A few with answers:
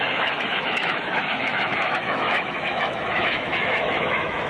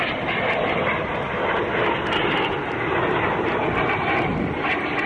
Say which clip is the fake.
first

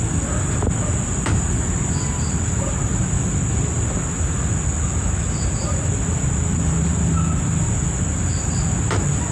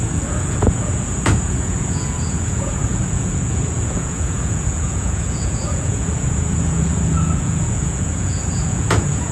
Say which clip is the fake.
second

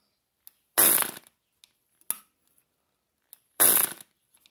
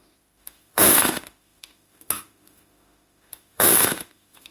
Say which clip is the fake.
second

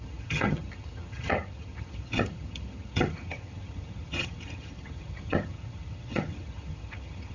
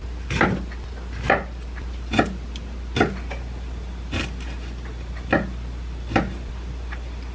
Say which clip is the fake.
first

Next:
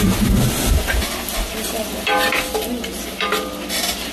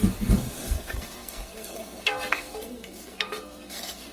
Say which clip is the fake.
second